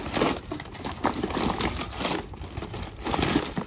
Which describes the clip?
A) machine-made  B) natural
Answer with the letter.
B